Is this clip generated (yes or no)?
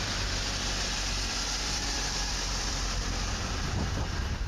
yes